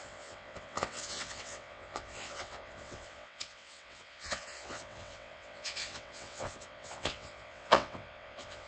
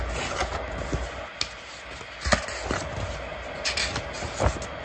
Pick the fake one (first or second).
first